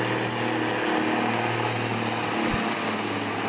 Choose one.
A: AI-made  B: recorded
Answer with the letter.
B